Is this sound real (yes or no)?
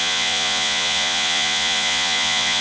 no